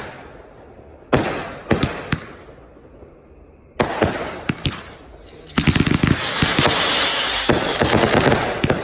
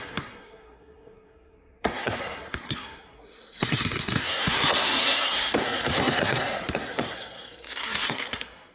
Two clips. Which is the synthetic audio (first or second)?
second